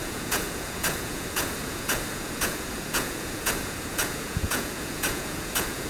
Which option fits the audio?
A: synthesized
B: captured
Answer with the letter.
A